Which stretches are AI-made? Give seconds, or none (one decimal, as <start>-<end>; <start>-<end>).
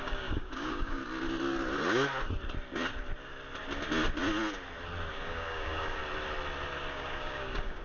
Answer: 0.0-1.0; 5.1-6.0; 6.9-7.8